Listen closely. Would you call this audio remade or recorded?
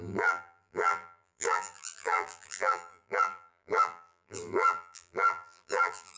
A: remade